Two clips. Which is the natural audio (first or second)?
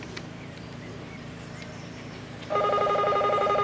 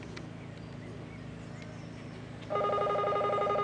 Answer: second